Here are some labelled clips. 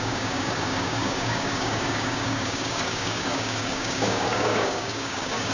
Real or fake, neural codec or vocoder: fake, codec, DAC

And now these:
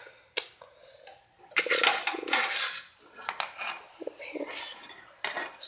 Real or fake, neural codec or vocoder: real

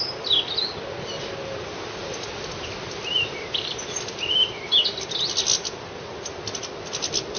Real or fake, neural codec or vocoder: real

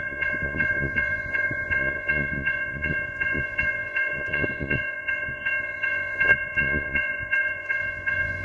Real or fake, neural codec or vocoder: fake, vocoder, Vocos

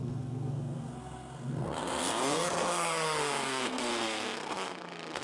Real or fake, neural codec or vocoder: fake, codec, SNAC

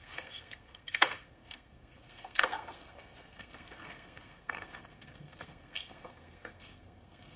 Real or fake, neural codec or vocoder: fake, codec, SNAC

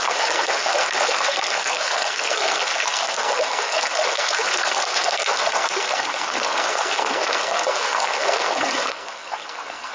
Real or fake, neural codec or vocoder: fake, codec, SNAC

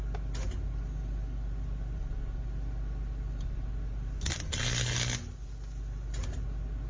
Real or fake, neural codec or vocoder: real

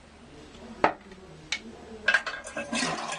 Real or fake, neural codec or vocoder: real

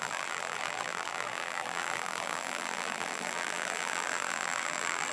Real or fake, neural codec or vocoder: fake, vocoder, BigVGAN v2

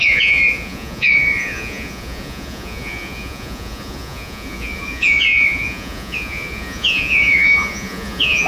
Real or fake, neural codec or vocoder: fake, vocoder, Vocos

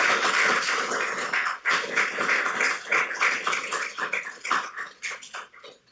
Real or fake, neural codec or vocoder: real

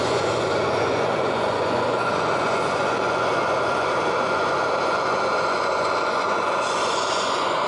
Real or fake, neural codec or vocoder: fake, vocoder, Vocos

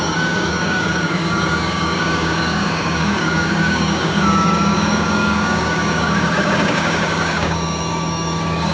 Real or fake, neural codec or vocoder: fake, codec, DAC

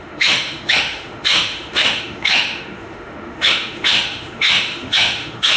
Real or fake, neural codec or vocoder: fake, autoencoder, DAC-VAE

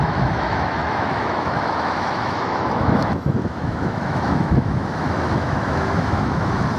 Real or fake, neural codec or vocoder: fake, autoencoder, DAC-VAE